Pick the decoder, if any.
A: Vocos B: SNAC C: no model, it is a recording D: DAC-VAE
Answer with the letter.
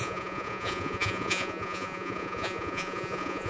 A